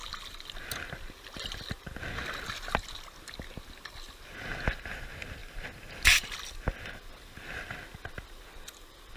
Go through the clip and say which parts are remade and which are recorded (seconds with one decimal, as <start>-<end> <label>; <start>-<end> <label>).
0.0-5.4 recorded; 5.4-8.5 remade; 8.5-9.2 recorded